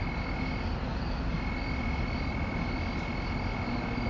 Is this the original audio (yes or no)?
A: yes